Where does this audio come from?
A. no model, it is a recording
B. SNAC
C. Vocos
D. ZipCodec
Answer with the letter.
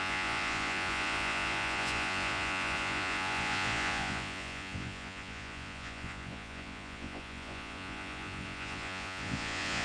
C